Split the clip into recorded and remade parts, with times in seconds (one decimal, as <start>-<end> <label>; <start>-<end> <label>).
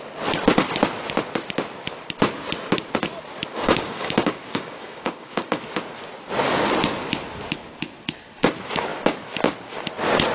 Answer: 0.0-3.5 recorded; 3.5-5.6 remade; 5.6-10.3 recorded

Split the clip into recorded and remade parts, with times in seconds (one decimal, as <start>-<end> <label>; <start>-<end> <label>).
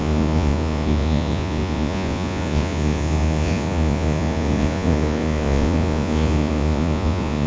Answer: 0.0-7.5 remade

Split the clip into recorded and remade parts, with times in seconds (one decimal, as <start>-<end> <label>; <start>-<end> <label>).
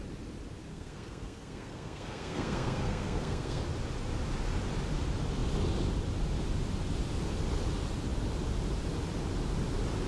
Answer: 0.0-0.7 recorded; 0.7-3.6 remade; 3.6-10.1 recorded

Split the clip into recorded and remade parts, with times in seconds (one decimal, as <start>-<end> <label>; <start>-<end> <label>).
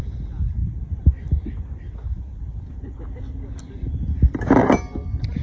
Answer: 0.0-5.4 recorded